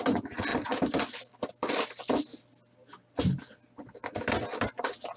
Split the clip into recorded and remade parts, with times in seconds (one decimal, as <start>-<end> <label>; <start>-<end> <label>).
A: 0.0-5.2 recorded